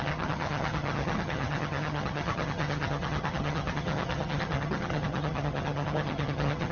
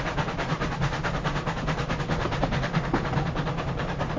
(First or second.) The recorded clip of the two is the second